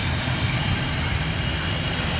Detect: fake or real real